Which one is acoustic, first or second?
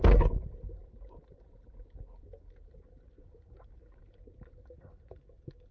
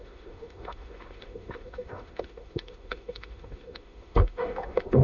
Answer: first